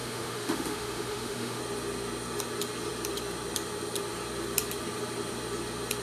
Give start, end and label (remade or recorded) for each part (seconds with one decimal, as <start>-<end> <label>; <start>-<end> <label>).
0.0-1.6 remade; 1.6-6.0 recorded